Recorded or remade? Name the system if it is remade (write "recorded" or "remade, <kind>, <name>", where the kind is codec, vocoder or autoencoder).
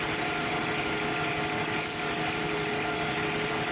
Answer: recorded